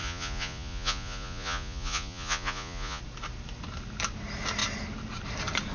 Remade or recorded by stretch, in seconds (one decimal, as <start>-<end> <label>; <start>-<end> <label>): 0.0-3.0 remade; 3.0-5.7 recorded